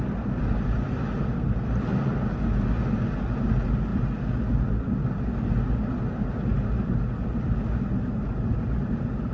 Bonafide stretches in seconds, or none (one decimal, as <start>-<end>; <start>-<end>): 0.0-9.3